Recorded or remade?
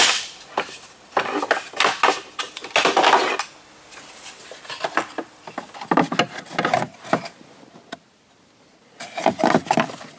recorded